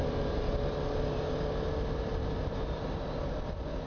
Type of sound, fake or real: real